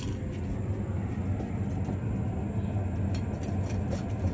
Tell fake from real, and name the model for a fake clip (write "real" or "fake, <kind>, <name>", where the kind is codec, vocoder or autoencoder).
real